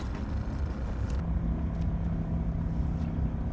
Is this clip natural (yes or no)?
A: yes